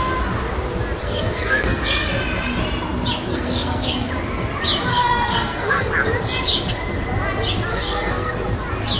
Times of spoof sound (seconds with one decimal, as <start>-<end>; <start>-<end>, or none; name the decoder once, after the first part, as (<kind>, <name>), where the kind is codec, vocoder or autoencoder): 1.0-1.8 (codec, SNAC); 3.3-4.1; 4.9-5.9; 7.7-8.3